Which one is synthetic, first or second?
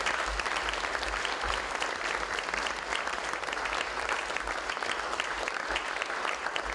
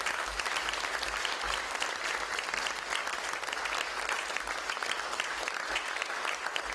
first